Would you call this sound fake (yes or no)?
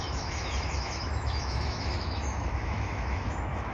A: yes